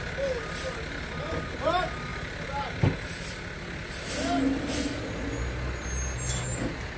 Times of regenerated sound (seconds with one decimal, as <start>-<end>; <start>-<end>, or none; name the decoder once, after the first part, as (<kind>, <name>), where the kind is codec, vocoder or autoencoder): none